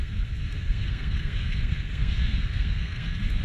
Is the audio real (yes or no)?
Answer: no